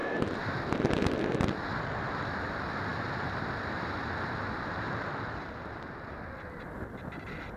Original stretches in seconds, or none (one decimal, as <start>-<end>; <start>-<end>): 0.0-7.6